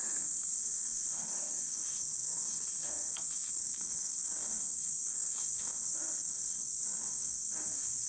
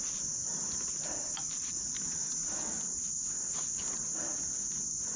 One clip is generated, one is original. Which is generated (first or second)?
first